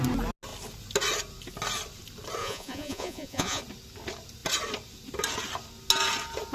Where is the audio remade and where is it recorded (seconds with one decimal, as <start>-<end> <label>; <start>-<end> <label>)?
0.0-2.4 recorded; 2.4-3.6 remade; 3.6-6.5 recorded